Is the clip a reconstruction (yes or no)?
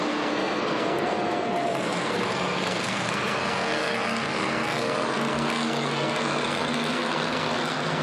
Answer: yes